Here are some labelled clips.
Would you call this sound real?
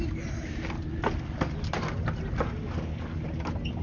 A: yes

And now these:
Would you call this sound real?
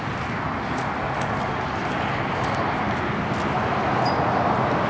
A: yes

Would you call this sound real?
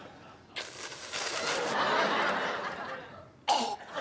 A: yes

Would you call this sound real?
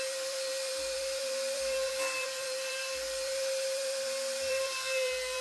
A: no